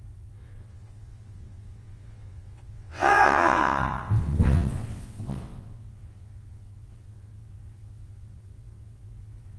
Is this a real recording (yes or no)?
no